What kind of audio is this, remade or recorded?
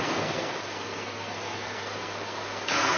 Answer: remade